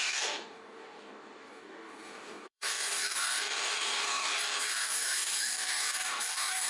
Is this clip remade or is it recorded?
remade